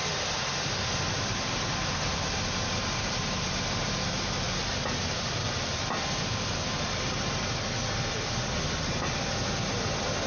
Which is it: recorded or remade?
remade